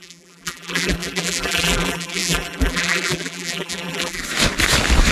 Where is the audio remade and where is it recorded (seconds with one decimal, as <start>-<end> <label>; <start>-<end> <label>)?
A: 0.0-4.2 remade; 4.2-5.1 recorded